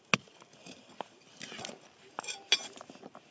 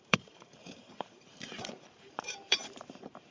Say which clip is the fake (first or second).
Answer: second